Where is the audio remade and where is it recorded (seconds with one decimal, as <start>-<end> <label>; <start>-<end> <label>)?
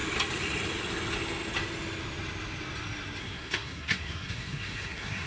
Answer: 0.0-3.2 recorded; 3.2-5.3 remade